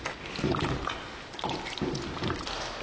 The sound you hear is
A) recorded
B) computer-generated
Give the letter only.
A